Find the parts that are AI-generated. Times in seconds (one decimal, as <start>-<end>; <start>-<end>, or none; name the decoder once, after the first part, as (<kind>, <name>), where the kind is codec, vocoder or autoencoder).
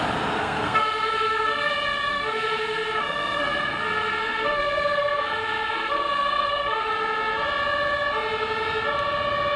0.4-1.7 (codec, SNAC); 2.1-6.9